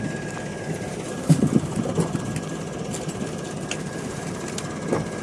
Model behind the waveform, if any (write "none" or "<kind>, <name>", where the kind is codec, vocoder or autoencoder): none